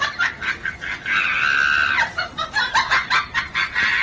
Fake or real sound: real